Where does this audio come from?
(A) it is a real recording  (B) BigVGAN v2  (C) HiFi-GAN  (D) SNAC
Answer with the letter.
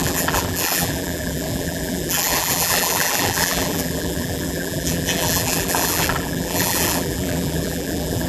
B